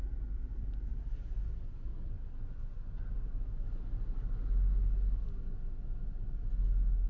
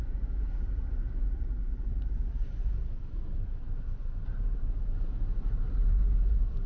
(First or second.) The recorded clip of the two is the first